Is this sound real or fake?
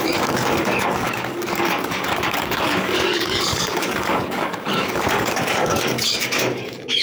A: fake